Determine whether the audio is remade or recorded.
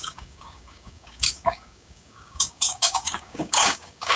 remade